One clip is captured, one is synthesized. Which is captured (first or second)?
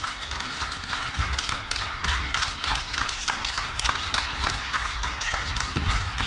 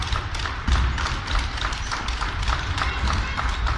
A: second